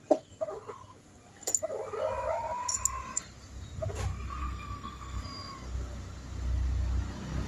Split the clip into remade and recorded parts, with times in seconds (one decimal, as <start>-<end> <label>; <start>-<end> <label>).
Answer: 0.0-4.4 recorded; 4.4-5.2 remade; 5.2-7.5 recorded